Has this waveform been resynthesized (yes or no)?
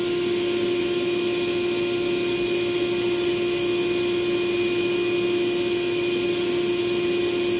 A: no